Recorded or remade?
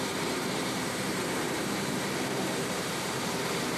remade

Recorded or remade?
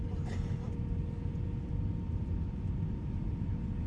recorded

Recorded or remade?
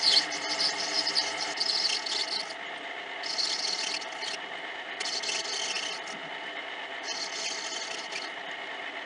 recorded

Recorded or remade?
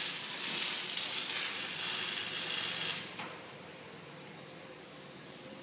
remade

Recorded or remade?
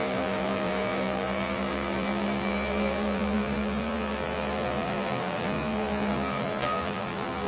remade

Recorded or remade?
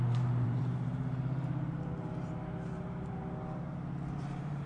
remade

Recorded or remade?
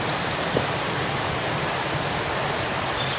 recorded